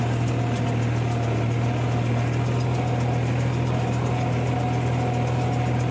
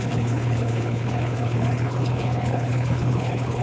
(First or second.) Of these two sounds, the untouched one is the first